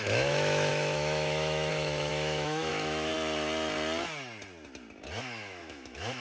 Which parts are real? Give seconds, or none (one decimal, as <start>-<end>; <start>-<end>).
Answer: 3.1-5.2